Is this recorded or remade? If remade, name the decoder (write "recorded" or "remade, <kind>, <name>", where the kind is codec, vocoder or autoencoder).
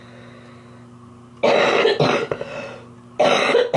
recorded